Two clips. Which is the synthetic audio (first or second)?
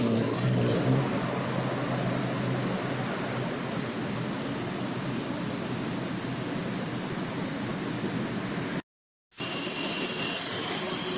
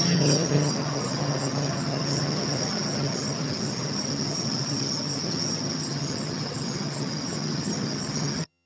second